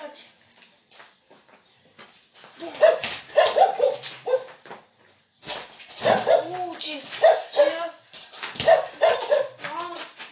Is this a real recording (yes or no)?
yes